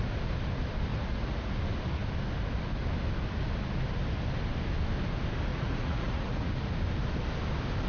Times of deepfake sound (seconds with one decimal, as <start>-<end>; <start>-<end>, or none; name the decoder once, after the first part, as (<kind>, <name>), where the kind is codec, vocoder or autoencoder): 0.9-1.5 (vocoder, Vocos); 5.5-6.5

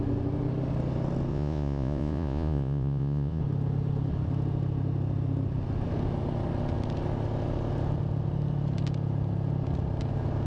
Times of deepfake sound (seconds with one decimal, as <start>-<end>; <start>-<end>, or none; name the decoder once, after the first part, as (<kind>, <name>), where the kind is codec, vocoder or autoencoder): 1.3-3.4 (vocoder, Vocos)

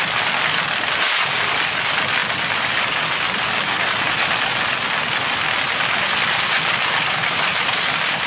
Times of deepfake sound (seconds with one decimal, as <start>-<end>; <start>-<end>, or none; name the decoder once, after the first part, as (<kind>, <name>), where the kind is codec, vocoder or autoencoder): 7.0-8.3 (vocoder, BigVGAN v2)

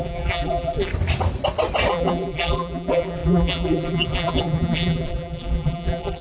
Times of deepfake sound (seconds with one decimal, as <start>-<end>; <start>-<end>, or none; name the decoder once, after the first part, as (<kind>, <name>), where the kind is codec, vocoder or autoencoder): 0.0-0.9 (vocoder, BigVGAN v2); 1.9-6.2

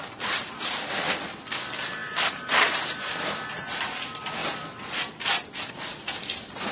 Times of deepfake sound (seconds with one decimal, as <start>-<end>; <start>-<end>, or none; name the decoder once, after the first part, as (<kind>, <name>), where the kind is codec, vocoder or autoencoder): 2.0-3.4 (vocoder, BigVGAN v2); 4.4-5.3

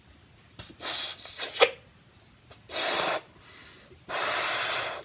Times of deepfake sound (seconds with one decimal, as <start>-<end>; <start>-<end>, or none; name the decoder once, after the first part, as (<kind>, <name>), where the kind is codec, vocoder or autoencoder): none